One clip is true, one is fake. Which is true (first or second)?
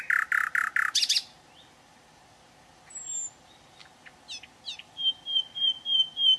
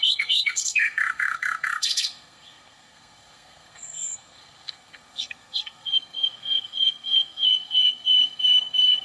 first